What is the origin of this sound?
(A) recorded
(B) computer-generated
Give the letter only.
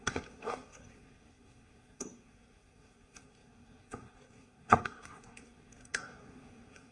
B